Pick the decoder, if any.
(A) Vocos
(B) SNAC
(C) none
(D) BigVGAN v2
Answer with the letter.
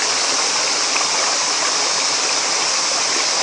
C